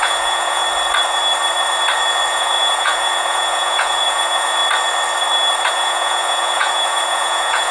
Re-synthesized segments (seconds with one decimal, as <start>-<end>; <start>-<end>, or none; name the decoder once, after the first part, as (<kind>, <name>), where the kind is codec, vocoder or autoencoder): 0.0-0.6 (vocoder, Vocos); 2.3-4.6; 5.7-7.7